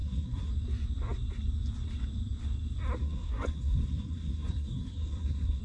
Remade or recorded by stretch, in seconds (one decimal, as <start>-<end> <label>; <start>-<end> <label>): 0.0-0.5 remade; 0.5-3.0 recorded; 3.0-5.6 remade

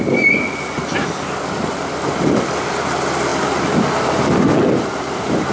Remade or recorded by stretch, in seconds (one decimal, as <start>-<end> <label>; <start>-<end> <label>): 0.0-5.5 recorded

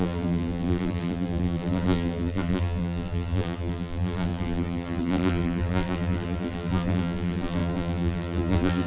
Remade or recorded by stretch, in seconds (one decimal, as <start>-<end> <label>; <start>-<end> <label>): 0.0-8.9 remade